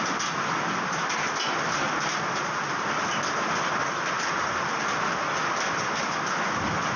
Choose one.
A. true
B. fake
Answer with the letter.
A